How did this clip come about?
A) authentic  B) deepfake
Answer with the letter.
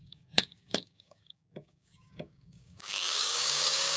B